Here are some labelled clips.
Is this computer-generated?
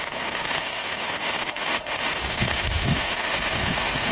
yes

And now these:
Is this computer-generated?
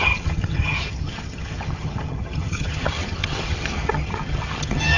yes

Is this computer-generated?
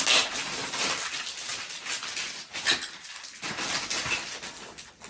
no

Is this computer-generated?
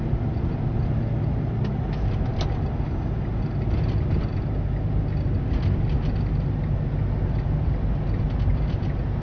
no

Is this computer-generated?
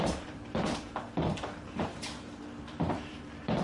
yes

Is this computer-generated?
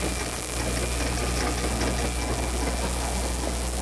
no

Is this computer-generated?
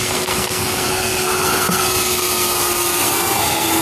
yes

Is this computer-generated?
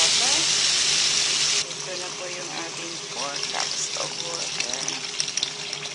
no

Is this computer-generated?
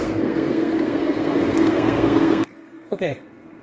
yes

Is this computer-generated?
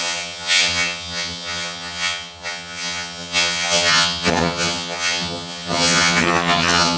yes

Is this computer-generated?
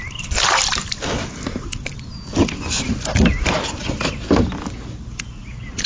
no